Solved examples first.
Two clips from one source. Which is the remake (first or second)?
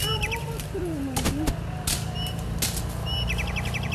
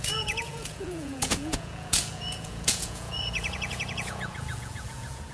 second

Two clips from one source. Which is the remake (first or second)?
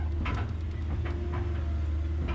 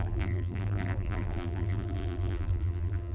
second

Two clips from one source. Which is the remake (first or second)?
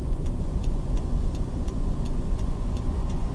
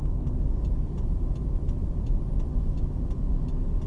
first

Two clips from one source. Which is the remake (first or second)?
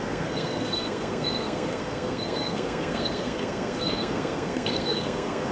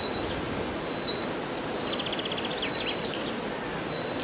first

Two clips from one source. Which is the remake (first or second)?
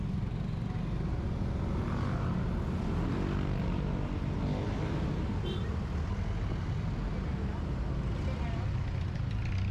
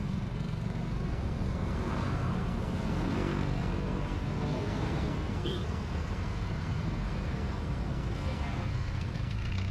second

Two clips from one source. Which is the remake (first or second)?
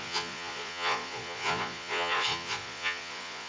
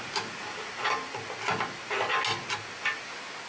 first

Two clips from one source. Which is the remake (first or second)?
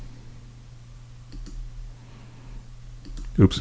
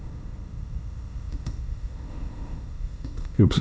second